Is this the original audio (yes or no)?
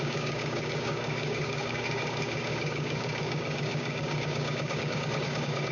no